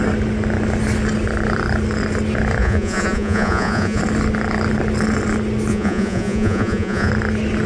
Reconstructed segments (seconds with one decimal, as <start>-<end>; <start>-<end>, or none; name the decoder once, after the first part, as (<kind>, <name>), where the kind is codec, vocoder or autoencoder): 2.6-4.0 (vocoder, Vocos); 5.7-7.1